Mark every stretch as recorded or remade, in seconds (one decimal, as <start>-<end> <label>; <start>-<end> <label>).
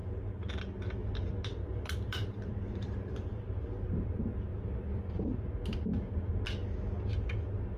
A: 0.0-1.0 recorded; 1.0-5.4 remade; 5.4-7.8 recorded